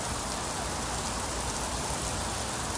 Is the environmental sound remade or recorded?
recorded